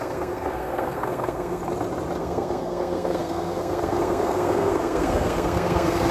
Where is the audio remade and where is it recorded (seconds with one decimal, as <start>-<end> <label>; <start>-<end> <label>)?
0.0-1.6 remade; 1.6-2.2 recorded; 2.2-6.1 remade